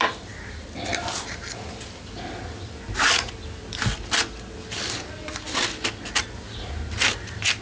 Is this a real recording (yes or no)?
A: yes